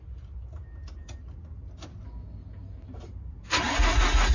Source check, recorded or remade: recorded